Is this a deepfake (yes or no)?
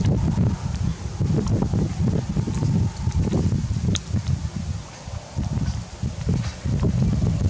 no